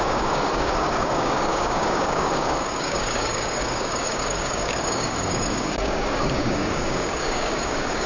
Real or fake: fake